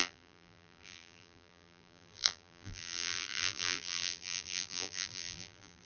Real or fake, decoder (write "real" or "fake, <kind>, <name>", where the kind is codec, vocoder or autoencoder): fake, vocoder, BigVGAN v2